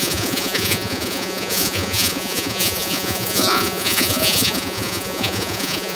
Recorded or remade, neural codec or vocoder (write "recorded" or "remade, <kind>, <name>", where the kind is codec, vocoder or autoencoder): remade, vocoder, Vocos